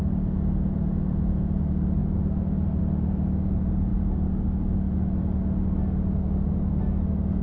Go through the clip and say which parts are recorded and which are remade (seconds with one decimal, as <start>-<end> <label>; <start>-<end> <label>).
0.0-0.9 recorded; 0.9-1.6 remade; 1.6-7.4 recorded